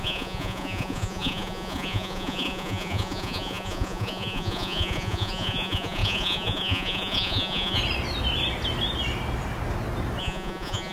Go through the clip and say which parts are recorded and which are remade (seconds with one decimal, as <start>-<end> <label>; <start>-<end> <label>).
0.0-7.8 remade; 7.8-10.2 recorded; 10.2-10.9 remade

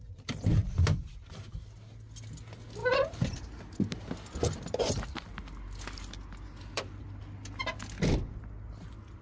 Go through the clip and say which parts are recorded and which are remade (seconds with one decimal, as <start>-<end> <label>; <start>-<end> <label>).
0.0-9.2 recorded

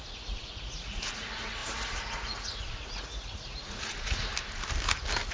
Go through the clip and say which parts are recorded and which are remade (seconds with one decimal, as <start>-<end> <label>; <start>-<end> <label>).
0.0-4.3 remade; 4.3-5.3 recorded

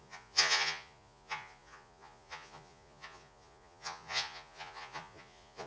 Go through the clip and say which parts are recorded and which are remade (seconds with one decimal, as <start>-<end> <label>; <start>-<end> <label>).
0.0-5.7 remade

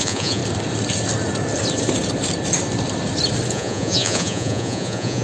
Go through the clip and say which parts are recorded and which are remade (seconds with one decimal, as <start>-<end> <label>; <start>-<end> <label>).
0.0-0.4 remade; 0.4-3.5 recorded; 3.5-5.2 remade

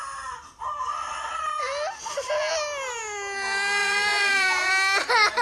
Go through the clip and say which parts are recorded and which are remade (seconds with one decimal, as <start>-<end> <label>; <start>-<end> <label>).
0.0-1.5 recorded; 1.5-2.0 remade; 2.0-3.8 recorded; 3.8-4.7 remade; 4.7-5.4 recorded